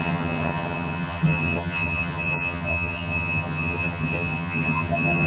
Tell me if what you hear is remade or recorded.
remade